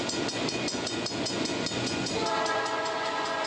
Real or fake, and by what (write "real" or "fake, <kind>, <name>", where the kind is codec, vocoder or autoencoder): fake, vocoder, Vocos